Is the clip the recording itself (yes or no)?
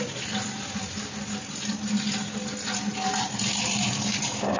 yes